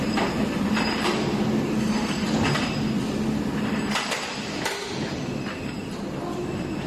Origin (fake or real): real